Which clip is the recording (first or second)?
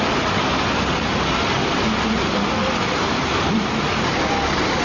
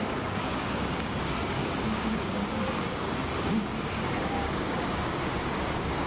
first